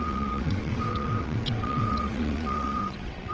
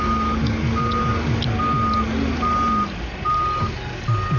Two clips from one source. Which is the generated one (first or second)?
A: first